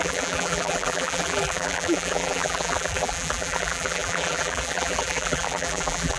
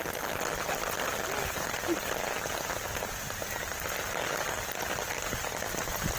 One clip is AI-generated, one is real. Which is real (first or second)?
second